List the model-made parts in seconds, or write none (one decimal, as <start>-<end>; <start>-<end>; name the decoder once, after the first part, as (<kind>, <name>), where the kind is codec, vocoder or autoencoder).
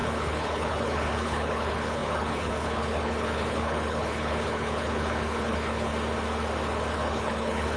0.0-5.9 (codec, HILCodec); 6.9-7.8